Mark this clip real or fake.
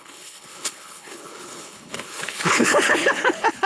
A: fake